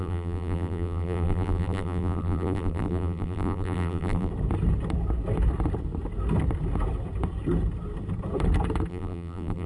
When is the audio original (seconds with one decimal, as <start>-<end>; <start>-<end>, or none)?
4.3-8.9